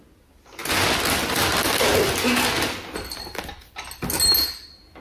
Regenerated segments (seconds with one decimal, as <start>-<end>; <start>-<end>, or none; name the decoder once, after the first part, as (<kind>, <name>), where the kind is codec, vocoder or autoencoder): none